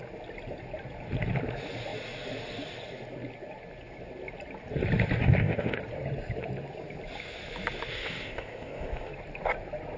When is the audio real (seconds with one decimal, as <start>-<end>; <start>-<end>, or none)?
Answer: 0.0-5.2; 5.8-7.9; 9.1-10.0